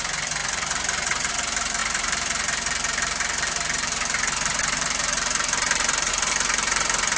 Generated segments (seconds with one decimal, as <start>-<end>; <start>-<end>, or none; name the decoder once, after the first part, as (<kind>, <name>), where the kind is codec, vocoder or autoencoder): 0.0-7.2 (vocoder, BigVGAN v2)